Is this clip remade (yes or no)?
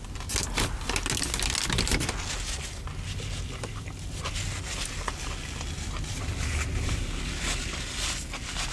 no